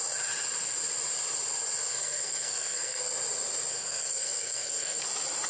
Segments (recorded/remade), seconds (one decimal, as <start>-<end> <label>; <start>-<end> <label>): 0.0-1.9 recorded; 1.9-3.0 remade; 3.0-3.7 recorded; 3.7-5.0 remade; 5.0-5.5 recorded